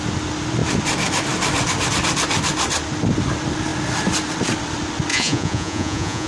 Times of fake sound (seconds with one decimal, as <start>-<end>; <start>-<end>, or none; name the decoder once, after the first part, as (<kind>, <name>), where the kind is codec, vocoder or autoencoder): 5.1-6.3 (vocoder, Vocos)

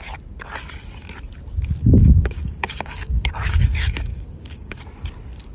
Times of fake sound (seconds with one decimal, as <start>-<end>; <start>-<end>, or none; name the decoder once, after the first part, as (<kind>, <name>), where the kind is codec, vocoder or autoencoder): 1.8-4.8 (codec, DAC)

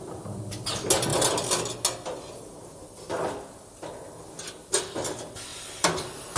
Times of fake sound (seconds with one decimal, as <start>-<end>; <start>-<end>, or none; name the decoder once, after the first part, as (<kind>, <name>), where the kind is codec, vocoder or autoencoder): 5.5-6.4 (vocoder, BigVGAN v2)

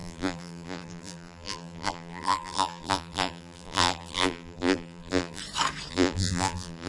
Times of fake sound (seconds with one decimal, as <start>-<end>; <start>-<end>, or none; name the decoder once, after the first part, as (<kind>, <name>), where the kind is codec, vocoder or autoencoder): 0.0-5.4 (vocoder, BigVGAN v2); 5.9-6.9